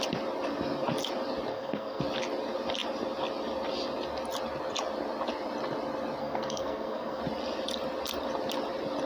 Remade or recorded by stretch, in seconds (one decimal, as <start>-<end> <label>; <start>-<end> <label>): 0.0-1.5 recorded; 1.5-2.0 remade; 2.0-6.2 recorded; 6.2-7.2 remade; 7.2-9.1 recorded